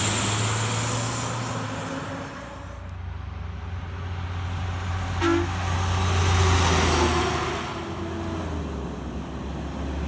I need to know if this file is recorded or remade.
recorded